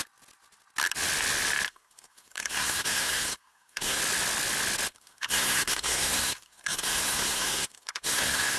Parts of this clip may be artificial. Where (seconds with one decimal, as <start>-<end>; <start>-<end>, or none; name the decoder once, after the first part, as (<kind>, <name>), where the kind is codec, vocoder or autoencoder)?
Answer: 1.7-4.0 (codec, SNAC); 4.9-8.6